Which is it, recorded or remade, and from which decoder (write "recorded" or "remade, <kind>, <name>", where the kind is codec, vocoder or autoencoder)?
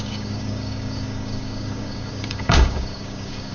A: remade, codec, DAC